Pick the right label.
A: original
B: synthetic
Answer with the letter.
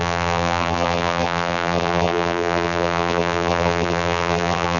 B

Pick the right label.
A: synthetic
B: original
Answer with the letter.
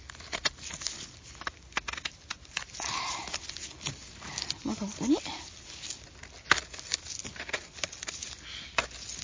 B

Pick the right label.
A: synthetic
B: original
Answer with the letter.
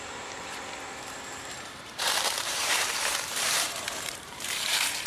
A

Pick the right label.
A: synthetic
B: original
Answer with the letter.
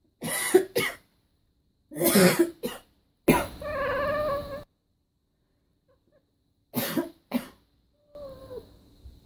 B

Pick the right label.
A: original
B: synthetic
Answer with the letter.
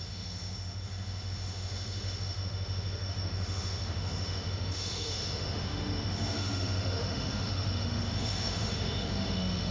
B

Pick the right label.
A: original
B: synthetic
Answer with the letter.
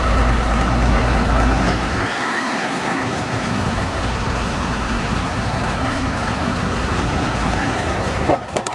B